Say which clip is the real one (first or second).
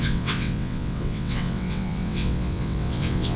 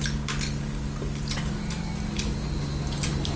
second